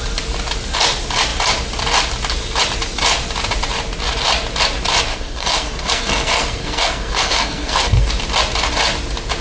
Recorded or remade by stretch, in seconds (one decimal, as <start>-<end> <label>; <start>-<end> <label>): 0.0-5.1 recorded; 5.1-8.1 remade; 8.1-9.4 recorded